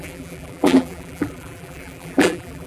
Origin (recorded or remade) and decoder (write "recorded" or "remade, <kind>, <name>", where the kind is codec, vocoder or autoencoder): remade, vocoder, BigVGAN v2